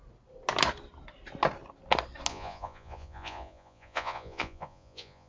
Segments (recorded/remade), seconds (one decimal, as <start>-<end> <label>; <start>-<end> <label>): 0.0-2.3 recorded; 2.3-5.3 remade